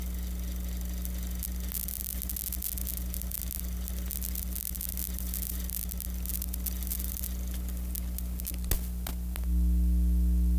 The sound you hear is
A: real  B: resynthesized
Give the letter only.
A